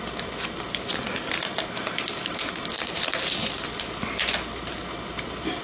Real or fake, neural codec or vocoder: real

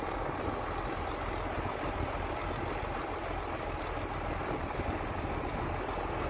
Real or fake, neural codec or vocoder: real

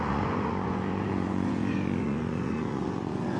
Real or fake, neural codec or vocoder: fake, vocoder, Vocos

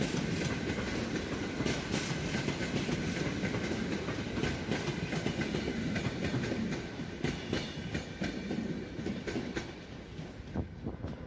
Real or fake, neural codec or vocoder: real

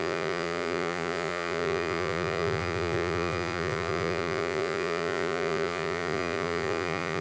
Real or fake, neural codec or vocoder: fake, vocoder, Vocos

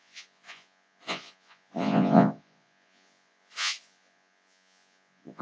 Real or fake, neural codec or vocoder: fake, vocoder, Vocos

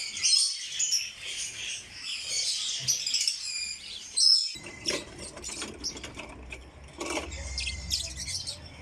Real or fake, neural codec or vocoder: real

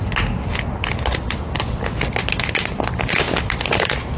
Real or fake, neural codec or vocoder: real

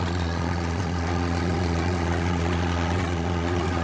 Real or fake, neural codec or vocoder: fake, vocoder, Vocos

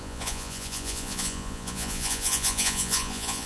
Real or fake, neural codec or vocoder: fake, vocoder, Vocos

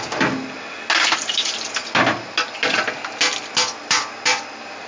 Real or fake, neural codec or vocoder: real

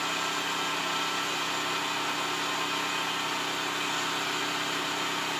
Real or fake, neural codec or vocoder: real